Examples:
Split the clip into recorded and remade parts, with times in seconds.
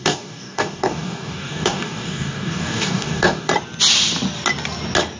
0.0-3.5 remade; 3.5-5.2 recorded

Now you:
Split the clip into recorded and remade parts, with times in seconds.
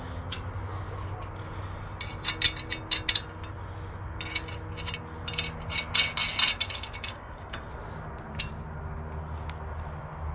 0.0-7.1 recorded; 7.1-7.7 remade; 7.7-10.3 recorded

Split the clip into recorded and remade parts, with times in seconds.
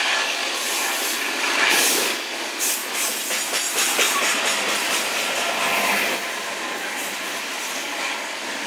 0.0-0.4 remade; 0.4-1.4 recorded; 1.4-2.8 remade; 2.8-7.7 recorded; 7.7-8.7 remade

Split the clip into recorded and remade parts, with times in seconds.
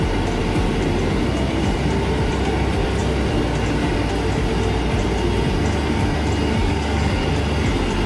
0.0-6.6 recorded; 6.6-7.3 remade; 7.3-8.1 recorded